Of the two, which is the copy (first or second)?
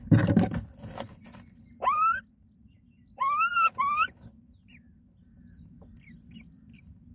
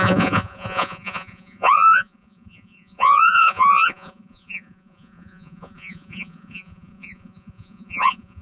second